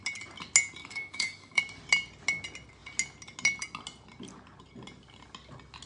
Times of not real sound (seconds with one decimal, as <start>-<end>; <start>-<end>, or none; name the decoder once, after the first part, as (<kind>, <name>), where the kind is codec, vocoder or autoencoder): 0.8-1.6 (codec, DAC)